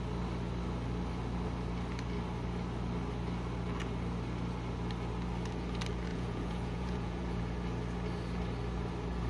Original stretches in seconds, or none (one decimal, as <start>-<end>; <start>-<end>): 0.0-6.1; 7.4-9.3